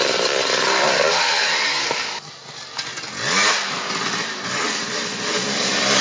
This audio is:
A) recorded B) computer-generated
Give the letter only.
A